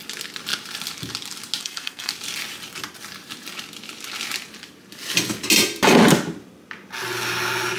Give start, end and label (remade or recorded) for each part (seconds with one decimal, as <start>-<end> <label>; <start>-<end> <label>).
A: 0.0-1.6 recorded; 1.6-2.1 remade; 2.1-7.8 recorded